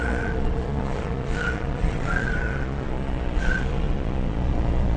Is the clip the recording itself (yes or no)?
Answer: no